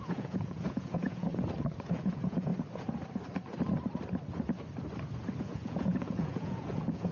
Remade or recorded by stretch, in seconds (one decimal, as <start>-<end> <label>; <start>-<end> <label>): 0.0-1.3 remade; 1.3-1.9 recorded; 1.9-2.5 remade; 2.5-5.4 recorded; 5.4-7.1 remade